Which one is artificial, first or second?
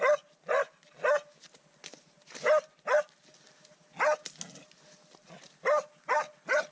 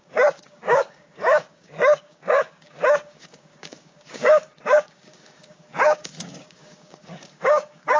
second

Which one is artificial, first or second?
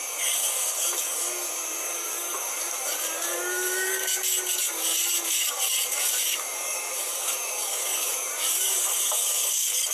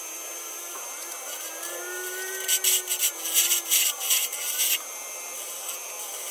first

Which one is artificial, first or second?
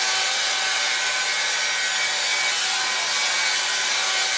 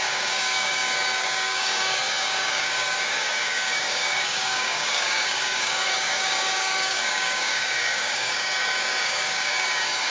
second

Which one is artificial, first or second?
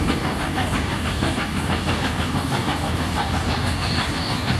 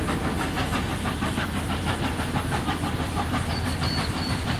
first